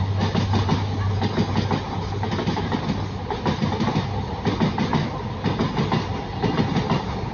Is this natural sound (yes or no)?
yes